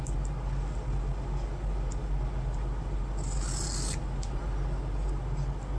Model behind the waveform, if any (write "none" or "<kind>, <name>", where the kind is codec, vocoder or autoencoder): none